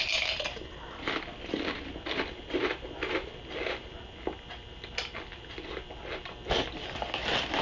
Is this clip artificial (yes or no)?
no